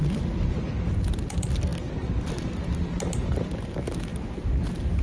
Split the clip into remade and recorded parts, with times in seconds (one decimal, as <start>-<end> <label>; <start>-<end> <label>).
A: 0.0-5.0 recorded